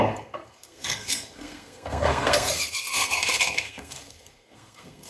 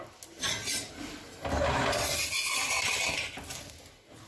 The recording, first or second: second